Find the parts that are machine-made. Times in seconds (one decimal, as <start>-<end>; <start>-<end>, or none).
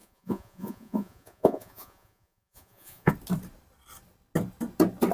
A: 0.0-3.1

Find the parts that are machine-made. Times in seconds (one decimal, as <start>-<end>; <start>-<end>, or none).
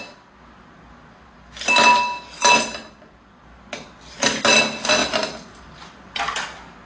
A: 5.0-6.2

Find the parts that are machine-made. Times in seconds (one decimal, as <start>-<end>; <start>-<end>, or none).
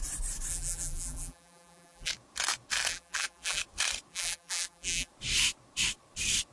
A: 0.5-2.1; 2.9-3.6; 4.1-5.1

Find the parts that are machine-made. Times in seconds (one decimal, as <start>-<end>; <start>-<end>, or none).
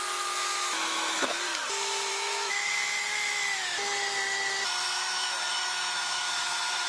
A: 0.0-1.5; 2.1-3.6; 5.0-6.9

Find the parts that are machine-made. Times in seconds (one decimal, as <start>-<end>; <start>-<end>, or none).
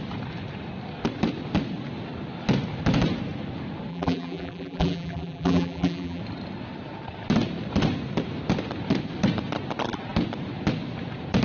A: 3.9-6.2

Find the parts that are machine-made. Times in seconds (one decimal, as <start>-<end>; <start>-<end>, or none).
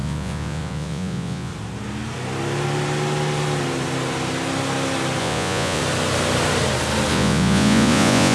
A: 0.0-1.5; 5.2-5.8; 7.1-8.3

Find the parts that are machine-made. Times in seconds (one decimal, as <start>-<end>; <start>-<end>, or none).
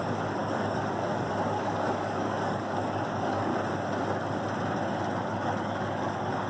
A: 0.0-3.5; 5.3-6.5